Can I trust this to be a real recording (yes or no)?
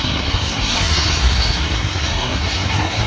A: no